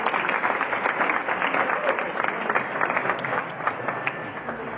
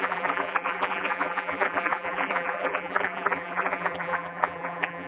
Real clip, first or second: first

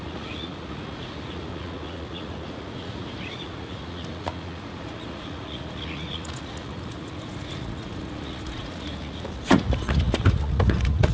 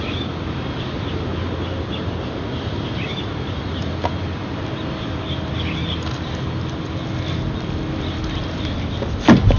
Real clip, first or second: second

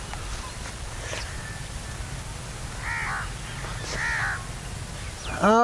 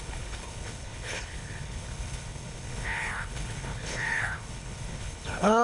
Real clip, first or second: first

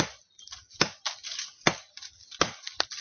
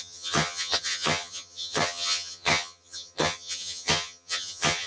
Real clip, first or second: first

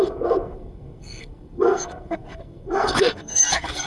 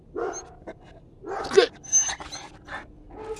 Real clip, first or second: second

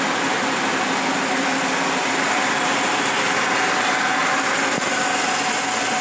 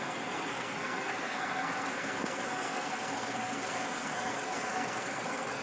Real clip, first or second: first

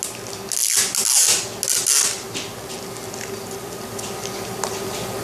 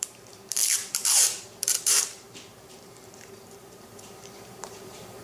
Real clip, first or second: first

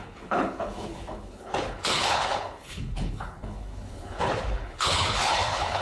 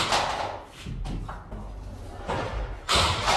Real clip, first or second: second